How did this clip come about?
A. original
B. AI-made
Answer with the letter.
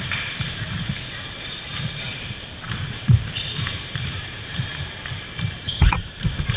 B